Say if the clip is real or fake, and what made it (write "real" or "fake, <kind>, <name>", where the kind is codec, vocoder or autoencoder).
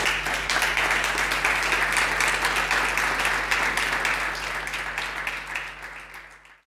real